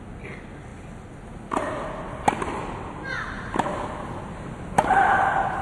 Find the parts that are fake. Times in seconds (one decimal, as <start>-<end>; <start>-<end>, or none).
none